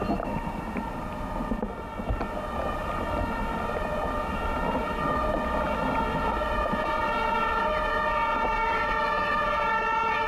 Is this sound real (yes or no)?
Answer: yes